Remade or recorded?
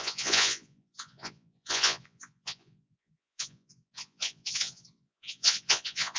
remade